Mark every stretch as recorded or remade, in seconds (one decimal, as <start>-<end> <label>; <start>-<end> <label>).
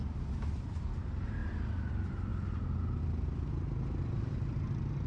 0.0-0.8 remade; 0.8-1.4 recorded; 1.4-1.9 remade; 1.9-5.1 recorded